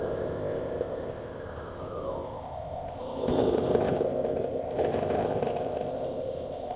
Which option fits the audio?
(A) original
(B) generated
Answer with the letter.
B